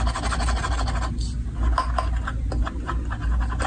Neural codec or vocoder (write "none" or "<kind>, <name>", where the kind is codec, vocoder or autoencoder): none